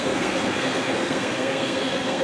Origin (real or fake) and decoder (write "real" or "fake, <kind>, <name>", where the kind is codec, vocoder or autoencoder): fake, codec, SNAC